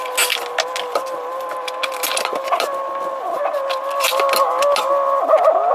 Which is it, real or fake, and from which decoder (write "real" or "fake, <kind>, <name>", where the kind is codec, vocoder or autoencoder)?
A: real